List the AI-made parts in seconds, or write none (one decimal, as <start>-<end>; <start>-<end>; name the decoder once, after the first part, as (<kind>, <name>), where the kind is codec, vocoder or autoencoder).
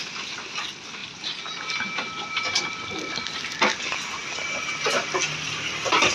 none